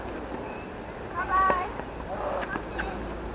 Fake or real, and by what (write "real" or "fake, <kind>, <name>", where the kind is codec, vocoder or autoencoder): real